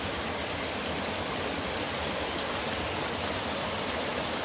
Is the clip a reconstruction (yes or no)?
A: no